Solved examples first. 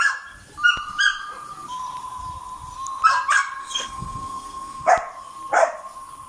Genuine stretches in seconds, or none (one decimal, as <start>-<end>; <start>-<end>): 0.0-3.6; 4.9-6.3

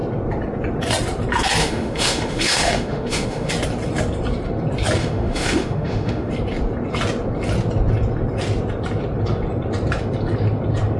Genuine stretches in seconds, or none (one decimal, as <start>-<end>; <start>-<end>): 0.0-1.6; 3.5-5.0; 6.3-11.0

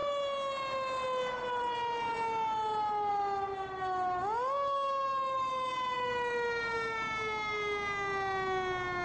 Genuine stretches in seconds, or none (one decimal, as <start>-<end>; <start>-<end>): 0.0-9.0

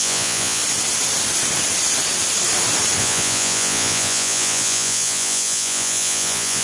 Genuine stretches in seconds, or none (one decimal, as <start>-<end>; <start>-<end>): 0.6-3.0

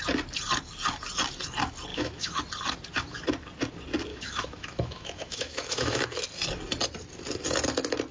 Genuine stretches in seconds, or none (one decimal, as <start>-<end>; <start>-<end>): 0.0-1.9; 2.4-4.1; 6.0-8.1

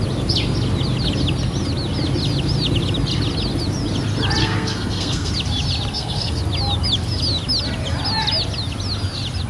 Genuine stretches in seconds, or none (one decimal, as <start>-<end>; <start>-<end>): 0.0-4.4; 5.3-5.9; 6.4-9.5

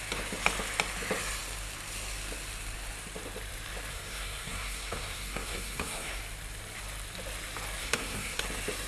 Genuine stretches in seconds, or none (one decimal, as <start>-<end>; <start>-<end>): 0.0-3.9; 6.2-7.8; 8.4-8.9

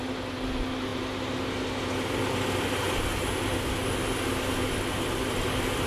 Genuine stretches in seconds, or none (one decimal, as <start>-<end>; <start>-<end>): 0.0-5.9